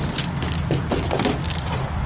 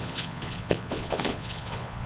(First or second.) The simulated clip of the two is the second